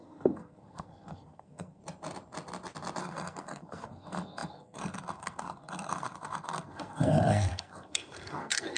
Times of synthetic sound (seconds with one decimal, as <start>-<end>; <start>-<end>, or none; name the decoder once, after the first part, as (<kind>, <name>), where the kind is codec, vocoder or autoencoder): 0.0-1.8 (codec, SNAC); 3.0-8.8